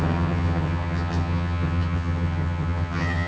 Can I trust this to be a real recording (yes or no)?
no